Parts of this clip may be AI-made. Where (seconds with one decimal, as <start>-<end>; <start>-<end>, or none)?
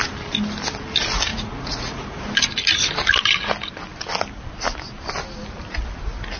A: 1.3-2.2